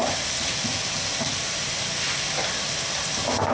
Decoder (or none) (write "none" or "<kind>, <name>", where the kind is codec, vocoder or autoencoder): none